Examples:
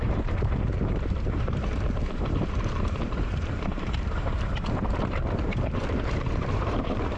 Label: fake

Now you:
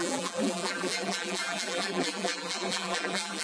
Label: fake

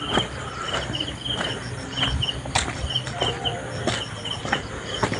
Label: real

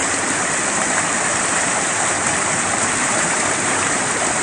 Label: fake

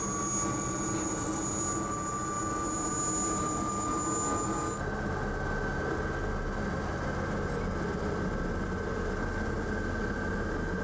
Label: real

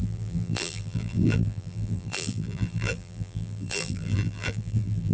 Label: fake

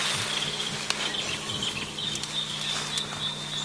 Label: real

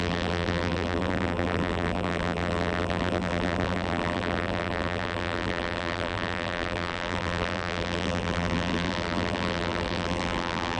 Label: fake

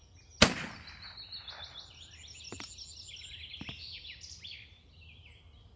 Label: real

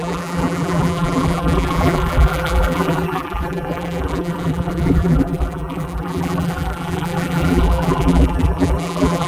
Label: fake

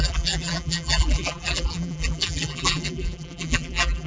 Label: fake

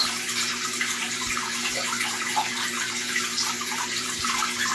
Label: fake